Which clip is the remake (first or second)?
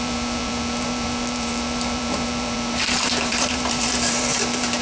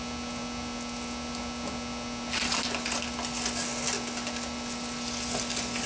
first